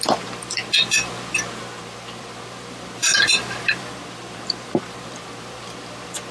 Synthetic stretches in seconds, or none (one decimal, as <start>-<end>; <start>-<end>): 0.0-0.6; 1.6-6.3